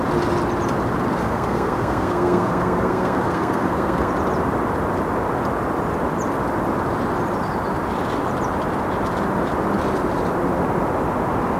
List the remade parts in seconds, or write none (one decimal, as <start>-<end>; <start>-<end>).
1.2-4.1